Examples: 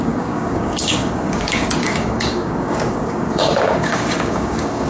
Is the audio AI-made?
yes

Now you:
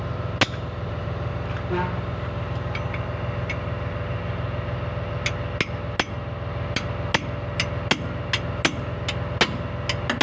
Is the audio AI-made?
no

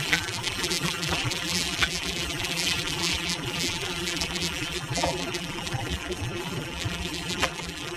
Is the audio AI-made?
yes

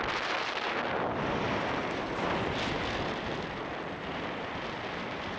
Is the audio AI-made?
no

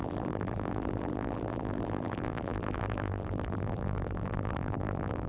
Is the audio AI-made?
yes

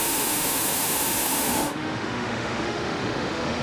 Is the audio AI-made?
yes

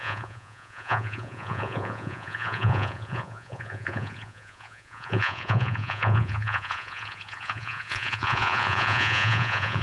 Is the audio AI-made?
yes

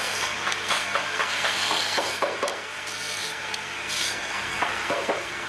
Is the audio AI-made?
yes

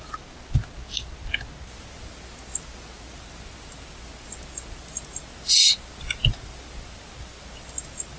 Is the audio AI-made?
no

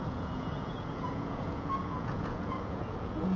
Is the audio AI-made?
yes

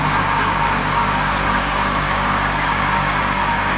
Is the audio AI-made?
yes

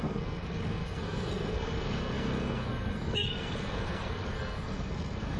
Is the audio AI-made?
yes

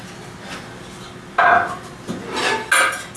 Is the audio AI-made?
no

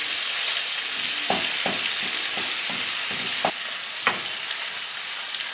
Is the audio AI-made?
no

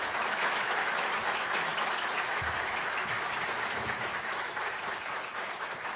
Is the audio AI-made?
yes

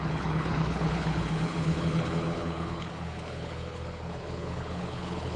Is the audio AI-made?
yes